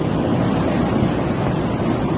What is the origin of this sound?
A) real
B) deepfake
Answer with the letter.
A